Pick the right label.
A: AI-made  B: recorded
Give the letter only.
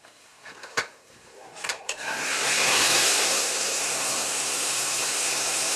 A